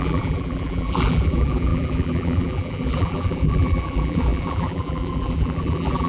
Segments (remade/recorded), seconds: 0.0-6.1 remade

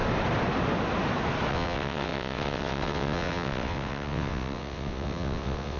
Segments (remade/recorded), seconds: 0.0-1.5 recorded; 1.5-5.8 remade

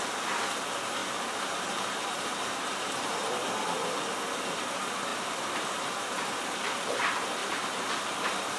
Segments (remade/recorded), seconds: 0.0-1.0 recorded; 1.0-3.2 remade; 3.2-5.1 recorded; 5.1-6.4 remade; 6.4-7.4 recorded; 7.4-8.6 remade

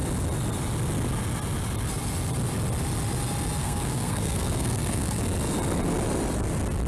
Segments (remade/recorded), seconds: 0.0-3.6 recorded; 3.6-5.2 remade; 5.2-6.9 recorded